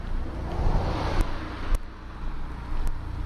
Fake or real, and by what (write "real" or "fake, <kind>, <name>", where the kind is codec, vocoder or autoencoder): real